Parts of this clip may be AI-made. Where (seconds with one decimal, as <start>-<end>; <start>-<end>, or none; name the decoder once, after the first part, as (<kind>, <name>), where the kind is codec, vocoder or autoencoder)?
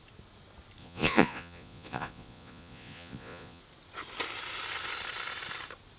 0.8-3.6 (vocoder, Vocos)